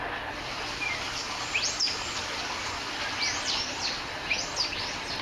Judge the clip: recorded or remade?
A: remade